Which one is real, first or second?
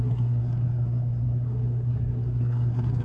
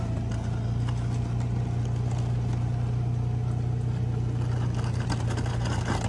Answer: second